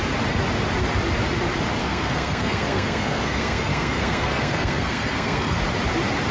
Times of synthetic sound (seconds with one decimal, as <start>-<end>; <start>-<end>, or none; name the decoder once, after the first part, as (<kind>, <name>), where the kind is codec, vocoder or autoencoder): 1.8-5.6 (codec, SNAC)